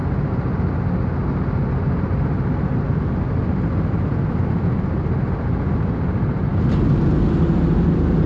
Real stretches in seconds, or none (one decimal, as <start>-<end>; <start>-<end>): 0.0-8.3